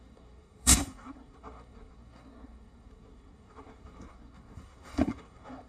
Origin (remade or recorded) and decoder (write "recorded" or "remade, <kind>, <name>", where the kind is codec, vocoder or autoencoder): remade, codec, SNAC